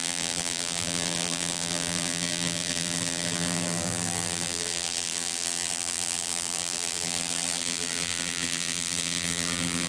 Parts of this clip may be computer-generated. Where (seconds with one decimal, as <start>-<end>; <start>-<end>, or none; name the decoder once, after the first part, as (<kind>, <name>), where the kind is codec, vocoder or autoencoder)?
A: 0.0-9.9 (vocoder, BigVGAN v2)